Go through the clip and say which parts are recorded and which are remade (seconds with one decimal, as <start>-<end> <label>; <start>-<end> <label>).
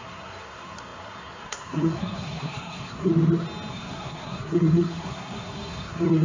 0.0-3.1 remade; 3.1-3.7 recorded; 3.7-6.2 remade